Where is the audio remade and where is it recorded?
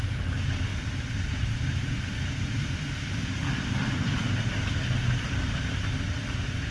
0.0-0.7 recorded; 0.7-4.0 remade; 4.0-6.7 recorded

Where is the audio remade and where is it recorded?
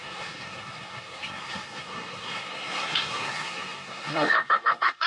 0.0-5.1 remade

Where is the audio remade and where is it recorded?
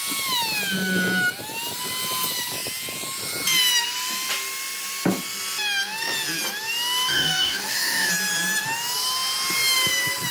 0.0-7.1 recorded; 7.1-8.1 remade; 8.1-10.3 recorded